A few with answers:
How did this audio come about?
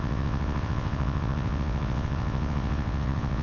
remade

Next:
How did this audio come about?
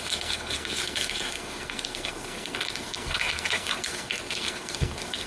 remade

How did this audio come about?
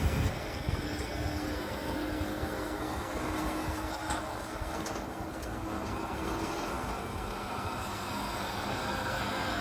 remade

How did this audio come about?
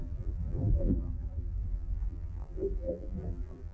remade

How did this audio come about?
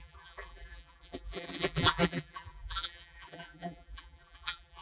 remade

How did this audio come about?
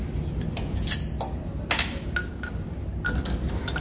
recorded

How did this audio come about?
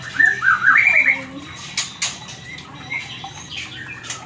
recorded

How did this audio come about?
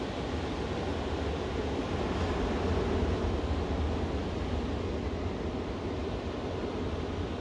recorded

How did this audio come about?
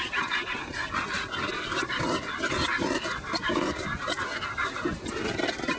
remade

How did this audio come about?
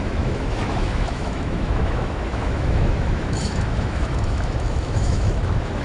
remade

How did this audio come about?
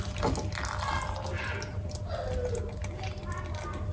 recorded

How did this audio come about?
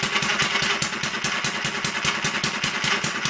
recorded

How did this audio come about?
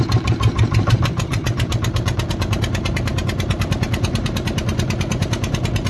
remade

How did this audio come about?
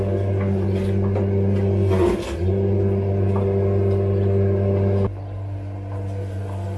recorded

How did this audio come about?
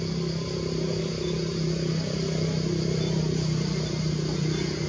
recorded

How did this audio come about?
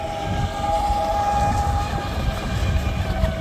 recorded